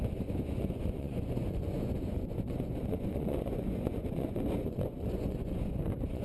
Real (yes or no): no